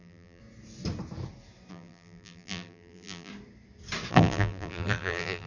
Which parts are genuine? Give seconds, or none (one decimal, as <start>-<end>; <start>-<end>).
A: 0.4-1.7; 3.3-4.1